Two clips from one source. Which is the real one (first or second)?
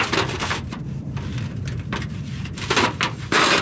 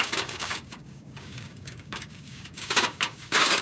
first